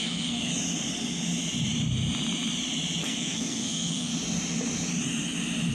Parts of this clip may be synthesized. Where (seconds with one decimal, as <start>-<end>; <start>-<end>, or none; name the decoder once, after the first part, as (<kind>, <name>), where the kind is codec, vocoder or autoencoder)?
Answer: 0.0-0.5 (codec, SNAC); 3.0-4.1